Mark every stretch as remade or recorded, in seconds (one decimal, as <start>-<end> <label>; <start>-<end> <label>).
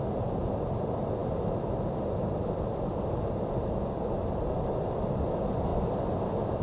0.0-6.6 recorded